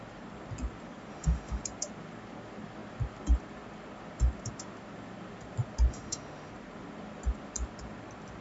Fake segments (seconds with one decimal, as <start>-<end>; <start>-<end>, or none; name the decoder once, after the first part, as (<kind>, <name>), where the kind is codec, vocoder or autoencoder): 1.1-1.6 (autoencoder, DAC-VAE); 5.9-6.5